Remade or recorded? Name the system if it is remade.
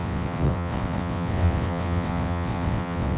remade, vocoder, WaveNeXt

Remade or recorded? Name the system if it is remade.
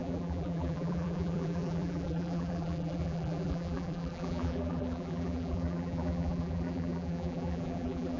remade, vocoder, BigVGAN v2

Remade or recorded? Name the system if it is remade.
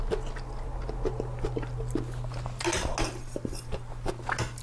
recorded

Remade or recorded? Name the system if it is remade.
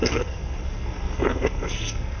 remade, codec, SNAC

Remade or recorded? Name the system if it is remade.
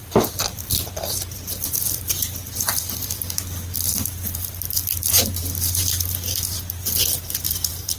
recorded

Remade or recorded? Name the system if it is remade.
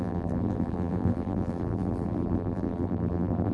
remade, vocoder, BigVGAN v2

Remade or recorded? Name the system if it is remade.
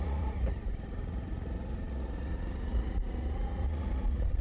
remade, vocoder, Vocos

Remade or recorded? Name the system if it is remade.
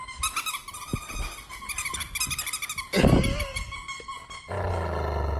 recorded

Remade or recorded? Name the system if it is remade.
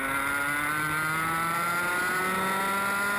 recorded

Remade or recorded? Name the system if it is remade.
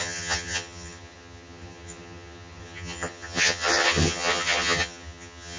remade, vocoder, HiFi-GAN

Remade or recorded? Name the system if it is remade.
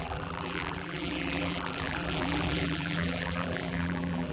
remade, vocoder, BigVGAN v2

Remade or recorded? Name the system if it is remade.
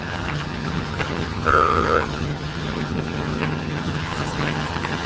remade, vocoder, HiFi-GAN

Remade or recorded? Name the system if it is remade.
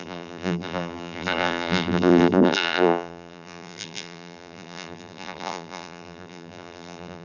remade, vocoder, BigVGAN v2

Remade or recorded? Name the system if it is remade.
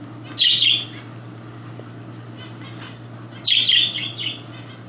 recorded